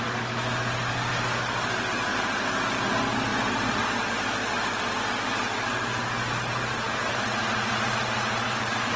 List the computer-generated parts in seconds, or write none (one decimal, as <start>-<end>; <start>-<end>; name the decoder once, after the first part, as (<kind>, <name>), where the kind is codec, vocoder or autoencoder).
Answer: 2.1-2.9 (vocoder, BigVGAN v2); 3.3-4.9; 6.3-9.0

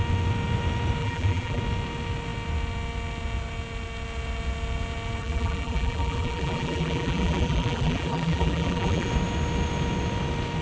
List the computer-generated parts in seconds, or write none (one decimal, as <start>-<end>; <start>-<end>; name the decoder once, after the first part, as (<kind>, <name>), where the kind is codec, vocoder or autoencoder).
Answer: 1.0-1.6 (vocoder, BigVGAN v2); 5.2-9.1

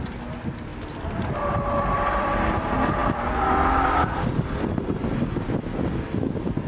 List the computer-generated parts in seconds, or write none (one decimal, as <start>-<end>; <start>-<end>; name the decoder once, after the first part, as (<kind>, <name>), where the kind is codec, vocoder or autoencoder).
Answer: none

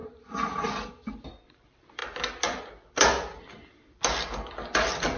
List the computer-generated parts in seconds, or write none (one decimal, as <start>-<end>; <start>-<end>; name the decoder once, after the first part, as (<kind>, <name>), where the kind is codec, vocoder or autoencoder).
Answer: 0.0-0.7 (vocoder, BigVGAN v2)

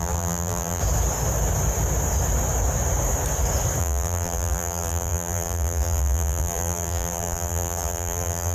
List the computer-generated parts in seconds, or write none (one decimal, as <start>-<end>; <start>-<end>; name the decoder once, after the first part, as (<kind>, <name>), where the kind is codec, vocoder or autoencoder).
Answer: 0.0-0.8 (vocoder, BigVGAN v2); 3.8-8.5

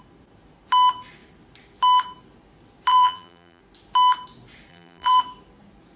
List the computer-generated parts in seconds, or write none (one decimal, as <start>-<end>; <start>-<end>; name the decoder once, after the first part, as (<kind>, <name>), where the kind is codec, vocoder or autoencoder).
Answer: 2.9-3.6 (vocoder, BigVGAN v2); 4.7-5.2

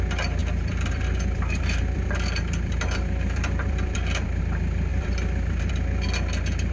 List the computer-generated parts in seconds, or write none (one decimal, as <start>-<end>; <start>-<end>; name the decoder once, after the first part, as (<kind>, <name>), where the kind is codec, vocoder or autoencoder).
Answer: 0.4-4.4 (vocoder, BigVGAN v2); 4.9-5.7

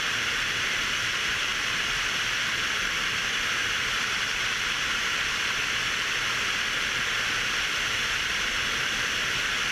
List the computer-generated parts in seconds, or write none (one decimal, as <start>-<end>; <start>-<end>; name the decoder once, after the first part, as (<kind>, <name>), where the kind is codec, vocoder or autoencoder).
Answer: 0.0-3.6 (vocoder, BigVGAN v2); 8.5-9.7